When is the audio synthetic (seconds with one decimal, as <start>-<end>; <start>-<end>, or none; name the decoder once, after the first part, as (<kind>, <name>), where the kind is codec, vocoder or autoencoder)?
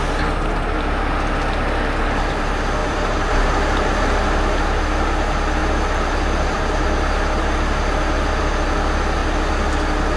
2.8-4.8 (vocoder, BigVGAN v2); 5.6-8.4